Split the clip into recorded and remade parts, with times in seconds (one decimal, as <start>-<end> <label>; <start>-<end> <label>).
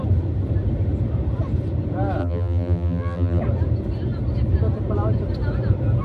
0.0-2.2 recorded; 2.2-3.4 remade; 3.4-6.0 recorded